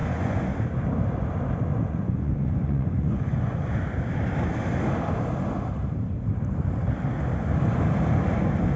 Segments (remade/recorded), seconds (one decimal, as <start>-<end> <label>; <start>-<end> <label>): 0.0-0.5 remade; 0.5-1.7 recorded; 1.7-3.7 remade; 3.7-8.8 recorded